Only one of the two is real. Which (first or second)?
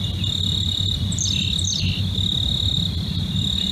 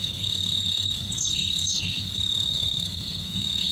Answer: first